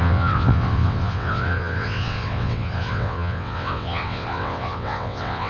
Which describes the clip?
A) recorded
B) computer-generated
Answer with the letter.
B